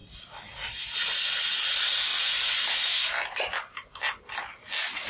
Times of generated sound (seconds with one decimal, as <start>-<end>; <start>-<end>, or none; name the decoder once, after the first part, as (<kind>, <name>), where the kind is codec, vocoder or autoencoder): none